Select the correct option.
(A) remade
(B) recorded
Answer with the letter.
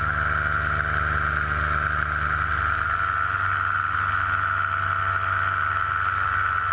B